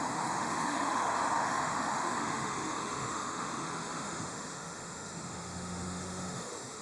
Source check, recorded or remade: remade